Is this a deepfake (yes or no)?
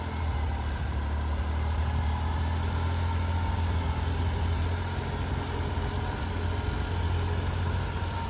no